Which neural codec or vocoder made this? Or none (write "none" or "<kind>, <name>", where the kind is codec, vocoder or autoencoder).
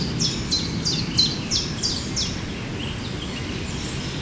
none